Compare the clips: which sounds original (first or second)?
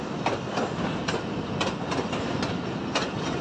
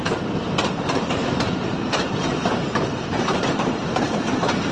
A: first